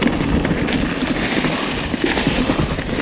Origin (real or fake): real